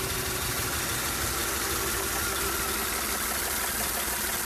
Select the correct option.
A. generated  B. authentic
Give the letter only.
B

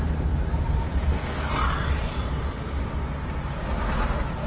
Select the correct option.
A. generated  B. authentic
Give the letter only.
B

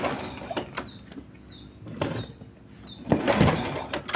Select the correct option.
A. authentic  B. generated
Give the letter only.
A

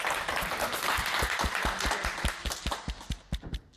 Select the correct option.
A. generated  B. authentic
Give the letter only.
B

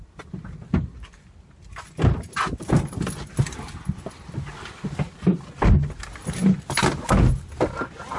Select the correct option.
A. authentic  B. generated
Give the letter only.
A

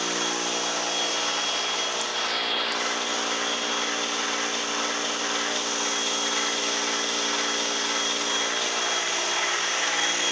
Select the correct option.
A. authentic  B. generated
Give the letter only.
A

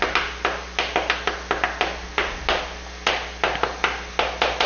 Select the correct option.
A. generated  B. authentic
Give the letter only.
B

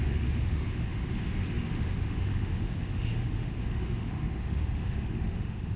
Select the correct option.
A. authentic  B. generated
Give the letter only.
B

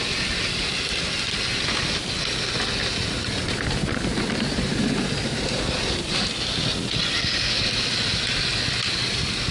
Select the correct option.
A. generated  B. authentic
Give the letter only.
B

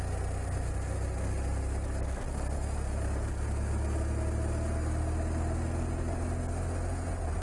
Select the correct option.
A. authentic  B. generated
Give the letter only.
A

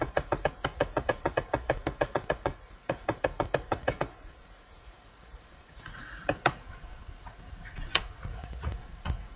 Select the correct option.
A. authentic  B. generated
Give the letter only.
B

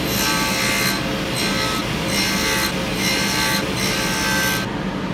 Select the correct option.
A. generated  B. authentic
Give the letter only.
B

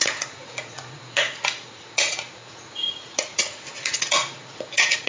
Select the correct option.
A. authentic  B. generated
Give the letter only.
B